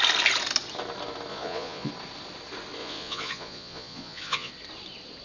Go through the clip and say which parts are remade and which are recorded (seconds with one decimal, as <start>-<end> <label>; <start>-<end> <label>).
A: 0.0-1.3 recorded; 1.3-1.9 remade; 1.9-2.8 recorded; 2.8-4.5 remade; 4.5-5.2 recorded